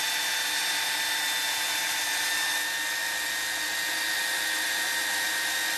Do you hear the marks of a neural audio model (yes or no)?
no